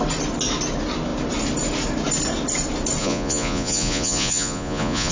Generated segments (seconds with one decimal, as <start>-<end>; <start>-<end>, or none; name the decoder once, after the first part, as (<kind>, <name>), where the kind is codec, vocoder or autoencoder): 3.0-5.1 (vocoder, Vocos)